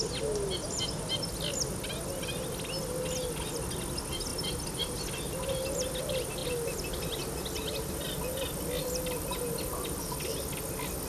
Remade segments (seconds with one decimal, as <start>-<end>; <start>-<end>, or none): none